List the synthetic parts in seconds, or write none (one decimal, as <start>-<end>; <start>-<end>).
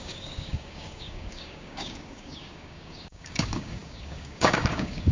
0.0-5.1